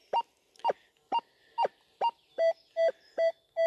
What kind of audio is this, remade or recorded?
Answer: recorded